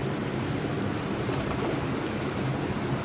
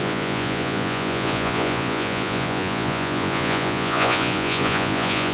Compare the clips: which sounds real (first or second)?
first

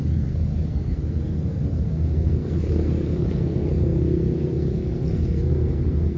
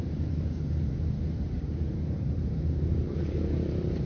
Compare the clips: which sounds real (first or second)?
second